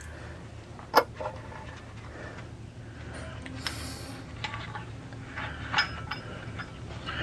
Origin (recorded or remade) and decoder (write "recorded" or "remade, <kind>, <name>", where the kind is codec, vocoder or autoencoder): recorded